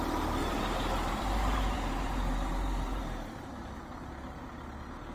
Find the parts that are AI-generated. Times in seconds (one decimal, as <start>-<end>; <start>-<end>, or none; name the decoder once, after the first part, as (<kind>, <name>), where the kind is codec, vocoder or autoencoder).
0.4-3.5 (vocoder, BigVGAN v2)